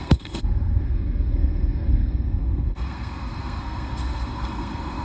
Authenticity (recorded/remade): remade